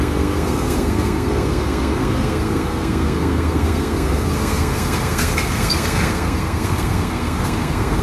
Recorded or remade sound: remade